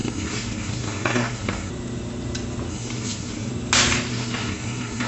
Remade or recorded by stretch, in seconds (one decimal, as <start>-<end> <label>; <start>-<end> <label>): 0.0-1.7 remade; 1.7-2.7 recorded; 2.7-3.5 remade; 3.5-4.1 recorded; 4.1-5.1 remade